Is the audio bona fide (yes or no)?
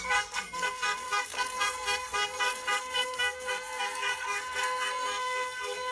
no